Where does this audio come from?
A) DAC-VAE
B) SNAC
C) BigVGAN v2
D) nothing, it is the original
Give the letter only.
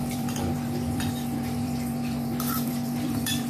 C